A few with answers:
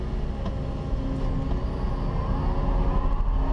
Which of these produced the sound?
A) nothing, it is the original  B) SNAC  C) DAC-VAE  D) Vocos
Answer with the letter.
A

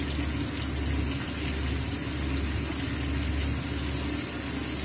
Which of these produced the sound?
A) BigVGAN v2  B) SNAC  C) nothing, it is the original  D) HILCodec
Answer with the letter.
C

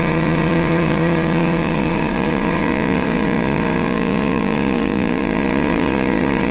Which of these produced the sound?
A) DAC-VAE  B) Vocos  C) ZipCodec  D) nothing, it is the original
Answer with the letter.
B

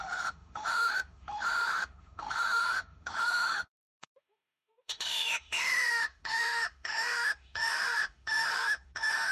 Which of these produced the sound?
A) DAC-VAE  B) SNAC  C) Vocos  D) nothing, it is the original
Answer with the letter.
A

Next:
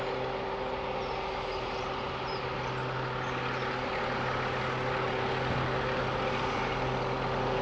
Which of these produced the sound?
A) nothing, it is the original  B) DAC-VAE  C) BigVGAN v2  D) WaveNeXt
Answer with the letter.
A